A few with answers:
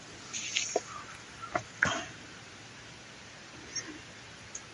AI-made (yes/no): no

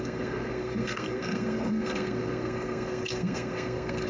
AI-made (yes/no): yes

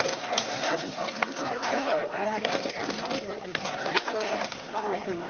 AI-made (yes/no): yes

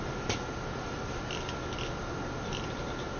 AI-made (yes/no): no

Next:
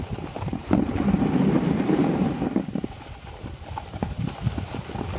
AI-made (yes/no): no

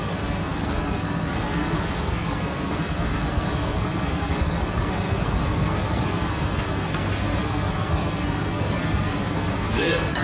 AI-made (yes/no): yes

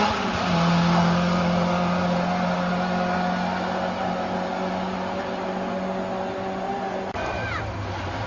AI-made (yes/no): no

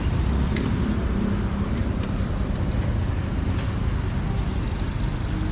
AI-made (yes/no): no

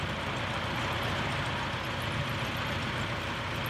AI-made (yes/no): no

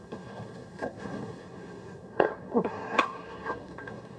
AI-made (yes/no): yes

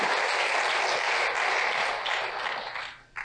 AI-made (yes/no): no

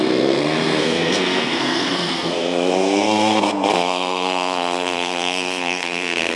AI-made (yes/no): yes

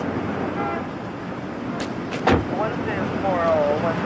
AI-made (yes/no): no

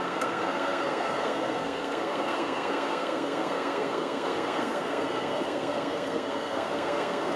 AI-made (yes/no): yes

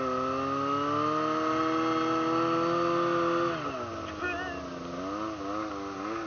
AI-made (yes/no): no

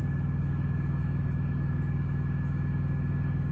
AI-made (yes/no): no